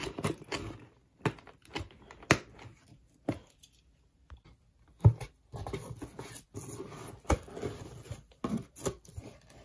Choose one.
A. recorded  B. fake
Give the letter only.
A